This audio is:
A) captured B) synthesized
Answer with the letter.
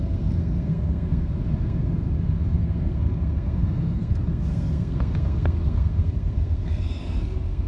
B